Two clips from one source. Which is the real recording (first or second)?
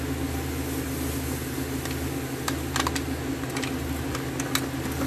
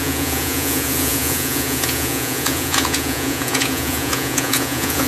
first